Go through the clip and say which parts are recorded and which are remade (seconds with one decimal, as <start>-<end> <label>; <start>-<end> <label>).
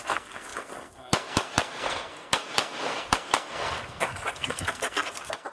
0.0-5.5 remade